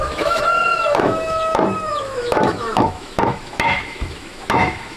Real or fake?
fake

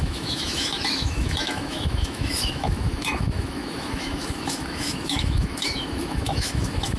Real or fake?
fake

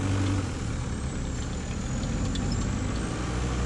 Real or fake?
real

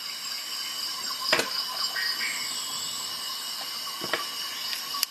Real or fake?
real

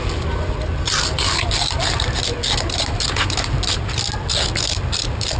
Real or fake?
real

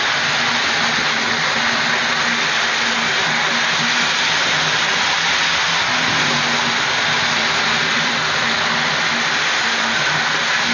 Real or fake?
real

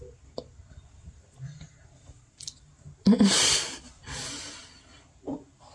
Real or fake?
real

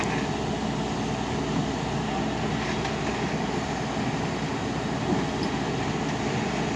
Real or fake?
real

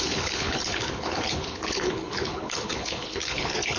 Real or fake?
fake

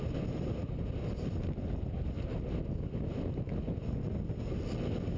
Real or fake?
real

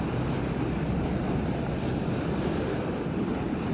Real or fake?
real